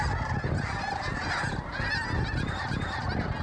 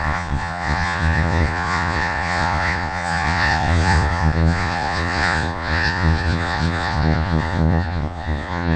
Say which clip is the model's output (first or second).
second